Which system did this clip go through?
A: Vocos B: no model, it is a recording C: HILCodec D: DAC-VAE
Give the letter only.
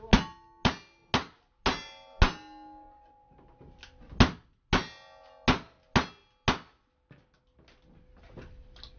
B